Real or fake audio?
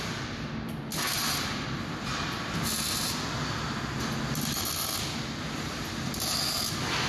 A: real